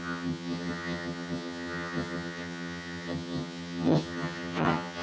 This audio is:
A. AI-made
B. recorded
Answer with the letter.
A